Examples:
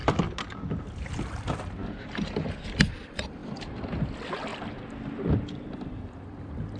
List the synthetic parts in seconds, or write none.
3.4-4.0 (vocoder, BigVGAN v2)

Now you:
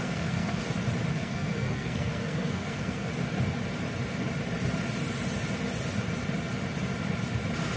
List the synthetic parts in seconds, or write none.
0.0-0.6 (codec, SNAC); 1.1-3.1

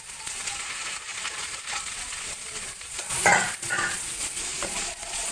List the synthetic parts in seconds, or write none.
0.0-5.3 (vocoder, Vocos)

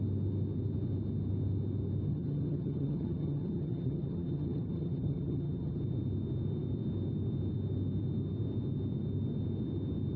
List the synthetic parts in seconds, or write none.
2.1-5.8 (vocoder, HiFi-GAN)